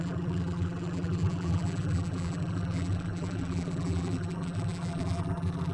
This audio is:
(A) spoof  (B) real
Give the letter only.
A